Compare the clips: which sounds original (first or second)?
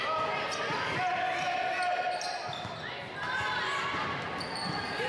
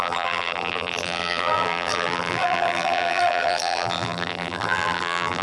first